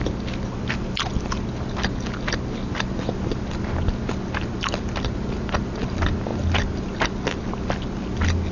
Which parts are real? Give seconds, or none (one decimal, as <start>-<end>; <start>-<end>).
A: 0.0-8.5